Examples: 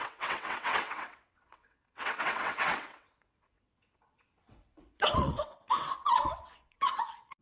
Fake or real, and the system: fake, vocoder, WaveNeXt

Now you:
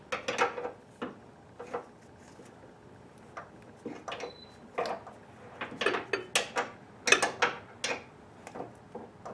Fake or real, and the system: real